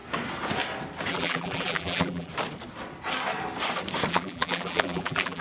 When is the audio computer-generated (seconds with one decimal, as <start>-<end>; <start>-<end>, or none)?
1.1-2.3; 4.1-5.4